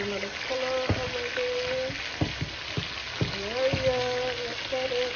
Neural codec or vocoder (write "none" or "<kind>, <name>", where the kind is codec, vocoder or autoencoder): none